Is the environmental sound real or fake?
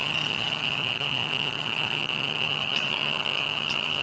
fake